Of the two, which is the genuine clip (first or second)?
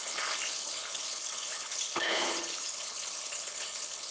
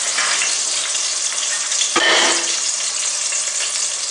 second